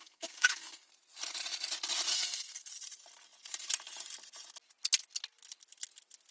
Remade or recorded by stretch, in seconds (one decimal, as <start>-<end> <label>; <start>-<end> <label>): 0.0-0.9 remade; 0.9-2.1 recorded; 2.1-2.7 remade; 2.7-6.3 recorded